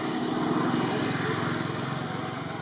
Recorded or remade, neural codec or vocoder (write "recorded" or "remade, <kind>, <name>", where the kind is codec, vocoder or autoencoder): recorded